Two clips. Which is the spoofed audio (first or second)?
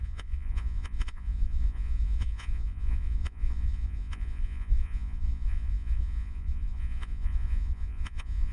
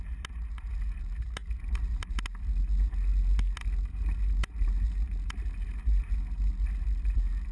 first